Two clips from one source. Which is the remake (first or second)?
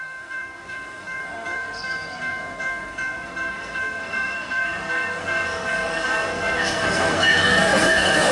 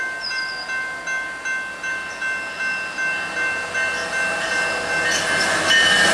first